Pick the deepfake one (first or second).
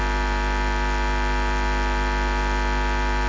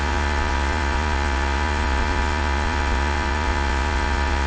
second